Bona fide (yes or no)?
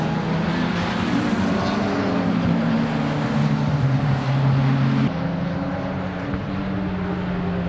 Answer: yes